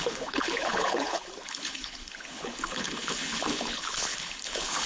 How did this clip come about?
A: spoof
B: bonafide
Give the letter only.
A